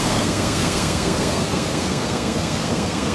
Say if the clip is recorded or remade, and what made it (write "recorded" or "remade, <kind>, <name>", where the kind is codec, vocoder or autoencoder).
remade, codec, SNAC